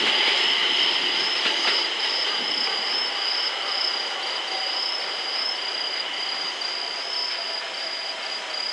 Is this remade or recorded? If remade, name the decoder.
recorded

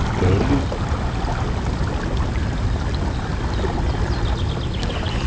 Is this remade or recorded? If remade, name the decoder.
recorded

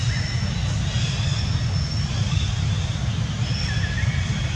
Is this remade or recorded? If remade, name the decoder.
recorded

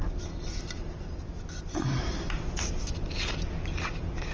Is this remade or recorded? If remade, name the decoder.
recorded